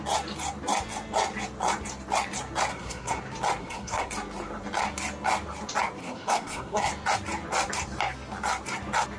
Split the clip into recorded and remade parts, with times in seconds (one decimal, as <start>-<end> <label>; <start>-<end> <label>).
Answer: 0.0-2.7 recorded; 2.7-3.2 remade; 3.2-3.6 recorded; 3.6-4.1 remade; 4.1-6.0 recorded; 6.0-6.9 remade; 6.9-9.2 recorded